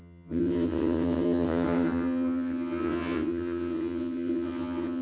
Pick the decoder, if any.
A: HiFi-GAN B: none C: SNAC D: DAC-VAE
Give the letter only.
A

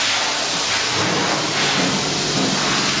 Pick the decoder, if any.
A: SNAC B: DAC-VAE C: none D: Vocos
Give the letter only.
C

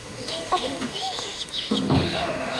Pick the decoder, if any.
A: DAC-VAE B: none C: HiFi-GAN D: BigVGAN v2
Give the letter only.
A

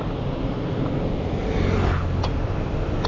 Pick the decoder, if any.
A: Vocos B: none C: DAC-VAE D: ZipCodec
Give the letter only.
B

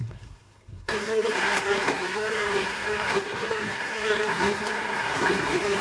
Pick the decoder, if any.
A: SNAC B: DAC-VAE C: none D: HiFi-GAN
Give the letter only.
A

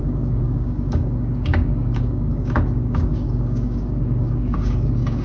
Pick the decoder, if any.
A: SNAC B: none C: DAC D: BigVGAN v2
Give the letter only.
C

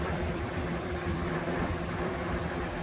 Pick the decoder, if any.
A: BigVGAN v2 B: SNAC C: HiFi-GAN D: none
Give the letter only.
A